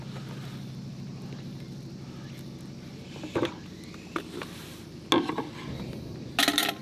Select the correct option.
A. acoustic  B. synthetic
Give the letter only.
A